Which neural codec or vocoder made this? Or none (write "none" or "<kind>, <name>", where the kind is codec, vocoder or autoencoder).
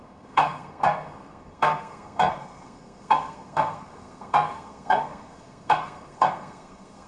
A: codec, SNAC